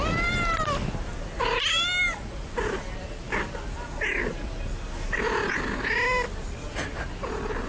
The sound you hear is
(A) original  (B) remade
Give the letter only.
A